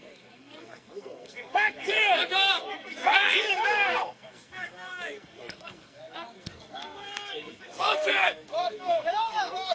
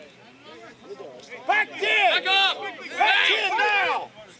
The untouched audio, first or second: second